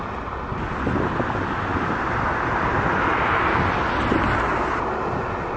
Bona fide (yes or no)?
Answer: yes